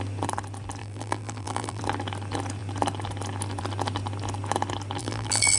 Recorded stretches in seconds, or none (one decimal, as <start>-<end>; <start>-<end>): 0.0-0.8; 1.8-5.0